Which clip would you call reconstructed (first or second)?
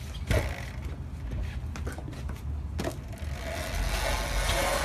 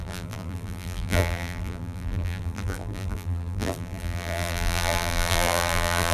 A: second